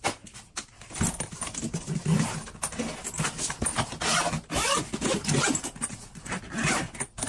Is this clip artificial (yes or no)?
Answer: no